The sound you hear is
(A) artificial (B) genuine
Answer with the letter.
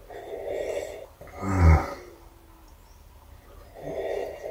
B